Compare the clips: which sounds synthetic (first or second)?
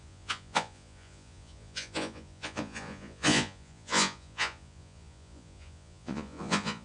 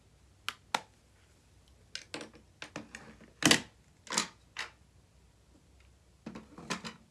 first